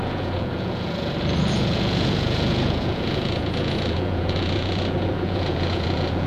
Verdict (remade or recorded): remade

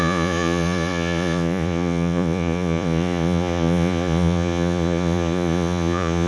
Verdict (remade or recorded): remade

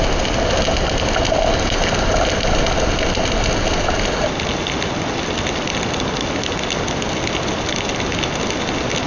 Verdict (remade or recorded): recorded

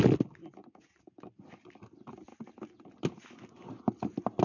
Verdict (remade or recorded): recorded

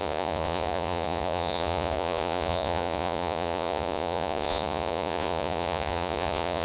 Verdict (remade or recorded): remade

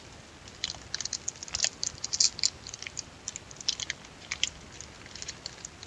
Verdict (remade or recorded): recorded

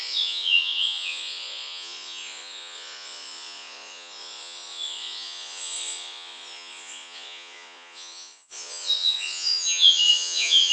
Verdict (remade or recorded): remade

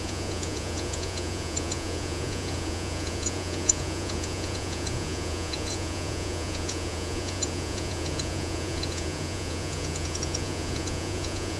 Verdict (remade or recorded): remade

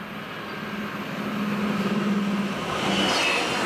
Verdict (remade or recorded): recorded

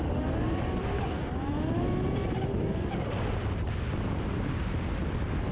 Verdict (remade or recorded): recorded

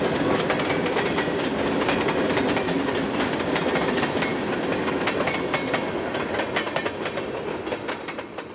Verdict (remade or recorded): recorded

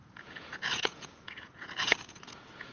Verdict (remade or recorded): remade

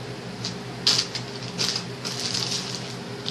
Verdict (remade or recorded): recorded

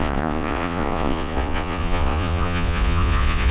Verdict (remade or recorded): remade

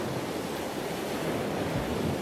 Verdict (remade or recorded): recorded